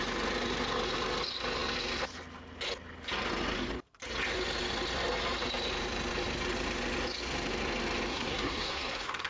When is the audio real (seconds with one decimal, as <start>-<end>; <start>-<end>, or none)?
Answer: 0.0-8.1